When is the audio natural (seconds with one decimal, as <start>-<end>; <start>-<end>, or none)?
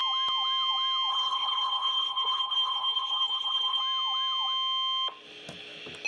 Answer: 0.0-1.1; 3.8-6.1